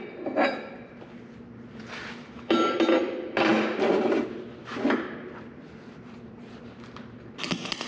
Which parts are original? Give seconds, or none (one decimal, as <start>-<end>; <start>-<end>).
0.0-7.9

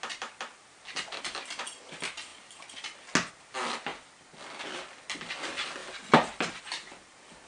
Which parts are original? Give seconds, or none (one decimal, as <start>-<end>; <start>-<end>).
0.0-7.5

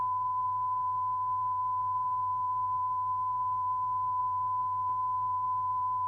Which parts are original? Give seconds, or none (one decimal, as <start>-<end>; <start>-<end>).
0.0-6.1

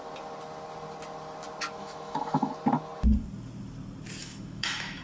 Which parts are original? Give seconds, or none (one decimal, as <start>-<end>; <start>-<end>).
0.0-1.8; 2.5-4.2

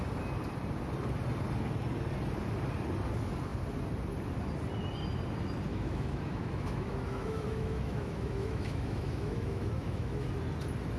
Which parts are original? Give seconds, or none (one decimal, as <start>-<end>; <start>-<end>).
0.0-5.7; 10.3-11.0

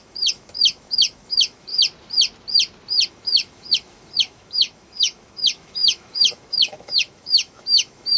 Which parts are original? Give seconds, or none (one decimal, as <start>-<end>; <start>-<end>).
1.7-3.1

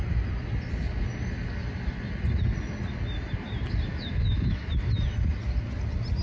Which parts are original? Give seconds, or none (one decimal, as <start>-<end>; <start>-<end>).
0.0-3.9; 4.7-6.2

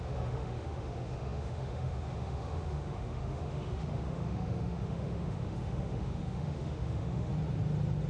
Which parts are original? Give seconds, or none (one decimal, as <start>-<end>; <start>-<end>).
7.3-8.1